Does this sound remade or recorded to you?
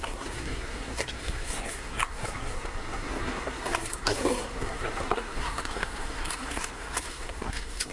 remade